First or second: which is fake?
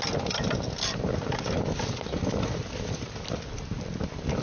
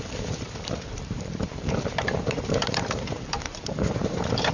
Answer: second